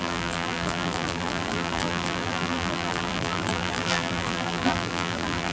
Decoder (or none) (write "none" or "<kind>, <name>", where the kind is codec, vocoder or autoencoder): vocoder, BigVGAN v2